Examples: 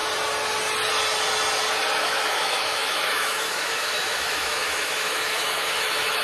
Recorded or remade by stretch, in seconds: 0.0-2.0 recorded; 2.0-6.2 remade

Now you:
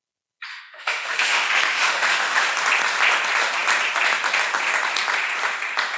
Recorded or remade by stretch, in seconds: 0.0-0.5 recorded; 0.5-2.5 remade; 2.5-6.0 recorded

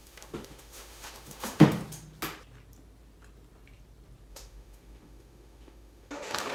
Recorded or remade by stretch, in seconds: 0.0-1.8 remade; 1.8-4.3 recorded; 4.3-6.5 remade

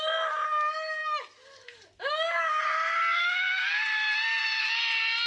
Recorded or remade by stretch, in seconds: 0.0-1.0 recorded; 1.0-2.6 remade; 2.6-3.2 recorded; 3.2-3.7 remade; 3.7-5.3 recorded